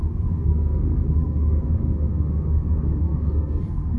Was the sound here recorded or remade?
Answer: remade